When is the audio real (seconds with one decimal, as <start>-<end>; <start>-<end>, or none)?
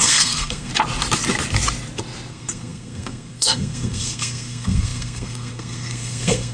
0.7-2.3